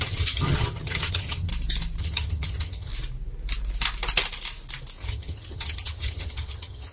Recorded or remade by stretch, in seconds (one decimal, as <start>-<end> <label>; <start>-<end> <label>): 0.0-1.5 remade; 1.5-2.0 recorded; 2.0-2.9 remade; 2.9-5.0 recorded; 5.0-6.9 remade